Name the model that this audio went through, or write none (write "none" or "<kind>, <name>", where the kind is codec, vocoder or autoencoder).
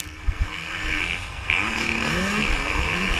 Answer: codec, SNAC